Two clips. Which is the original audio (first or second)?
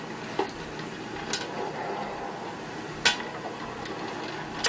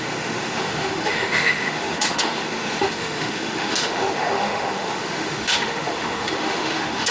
first